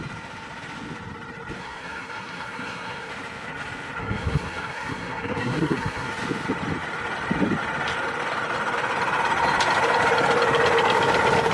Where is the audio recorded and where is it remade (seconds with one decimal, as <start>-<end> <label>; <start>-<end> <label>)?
0.0-1.6 recorded; 1.6-3.1 remade; 3.1-4.0 recorded; 4.0-6.1 remade; 6.1-11.5 recorded